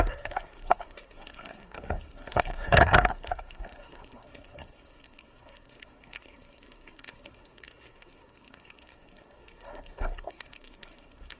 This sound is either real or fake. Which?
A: fake